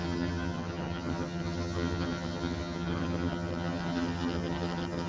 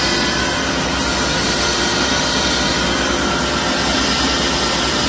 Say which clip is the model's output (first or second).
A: first